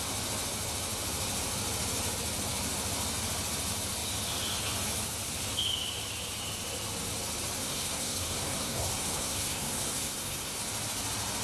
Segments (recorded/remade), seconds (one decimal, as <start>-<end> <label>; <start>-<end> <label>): 0.0-7.6 recorded; 7.6-10.6 remade; 10.6-11.4 recorded